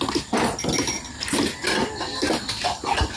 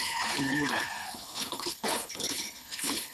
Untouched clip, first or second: first